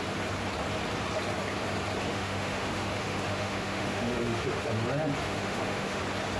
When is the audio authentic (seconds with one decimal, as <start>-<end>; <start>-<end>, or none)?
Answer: 0.0-2.1; 4.7-5.2; 6.0-6.4